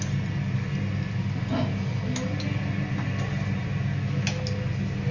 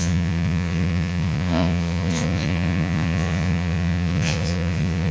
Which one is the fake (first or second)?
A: second